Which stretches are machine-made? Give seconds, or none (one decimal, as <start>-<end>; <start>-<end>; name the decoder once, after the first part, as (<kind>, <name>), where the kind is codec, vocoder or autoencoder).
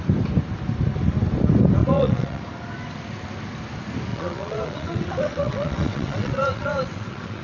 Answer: 1.8-2.4 (vocoder, WaveNeXt); 4.1-7.4